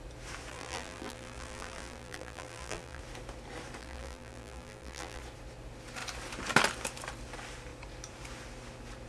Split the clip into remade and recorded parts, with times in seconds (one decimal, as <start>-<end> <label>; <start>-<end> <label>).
0.0-0.5 recorded; 0.5-3.0 remade; 3.0-3.8 recorded; 3.8-5.2 remade; 5.2-9.1 recorded